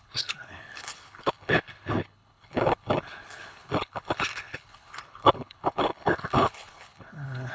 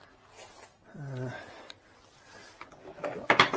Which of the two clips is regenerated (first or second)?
first